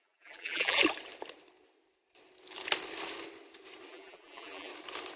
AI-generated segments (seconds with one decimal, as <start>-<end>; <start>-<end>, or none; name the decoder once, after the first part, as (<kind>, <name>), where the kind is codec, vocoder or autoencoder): 0.0-0.8 (vocoder, BigVGAN v2); 3.9-4.7